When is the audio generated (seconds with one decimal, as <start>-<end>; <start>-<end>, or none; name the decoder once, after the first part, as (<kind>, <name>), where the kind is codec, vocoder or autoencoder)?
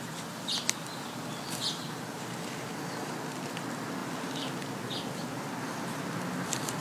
none